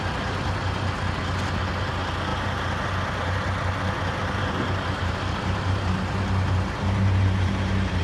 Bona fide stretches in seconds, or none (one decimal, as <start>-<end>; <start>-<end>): 0.0-4.2